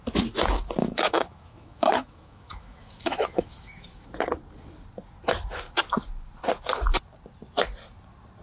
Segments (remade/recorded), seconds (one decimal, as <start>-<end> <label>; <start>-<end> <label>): 0.0-0.8 recorded; 0.8-4.1 remade; 4.1-8.4 recorded